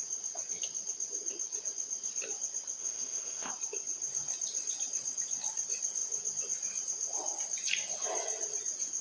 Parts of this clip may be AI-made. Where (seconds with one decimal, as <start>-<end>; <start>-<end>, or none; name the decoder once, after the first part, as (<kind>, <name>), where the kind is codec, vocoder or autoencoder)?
2.8-3.5 (codec, ZipCodec)